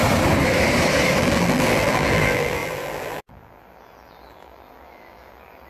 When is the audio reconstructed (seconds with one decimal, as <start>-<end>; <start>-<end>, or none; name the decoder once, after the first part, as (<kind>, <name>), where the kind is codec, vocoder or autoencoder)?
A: 1.2-5.7 (vocoder, BigVGAN v2)